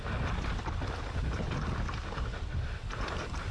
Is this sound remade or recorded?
recorded